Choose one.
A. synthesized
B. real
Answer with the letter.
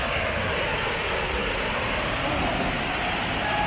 B